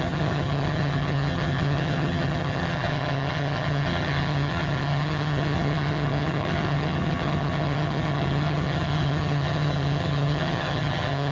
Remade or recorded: remade